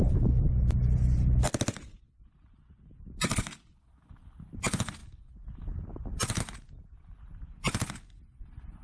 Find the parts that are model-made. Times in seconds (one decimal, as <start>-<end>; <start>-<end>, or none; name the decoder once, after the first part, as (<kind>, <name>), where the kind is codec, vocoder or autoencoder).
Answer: none